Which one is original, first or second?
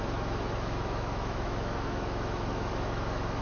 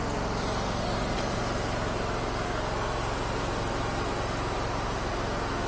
second